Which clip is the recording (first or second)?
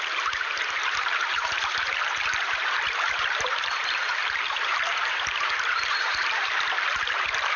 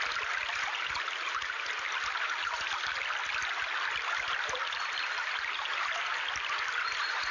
second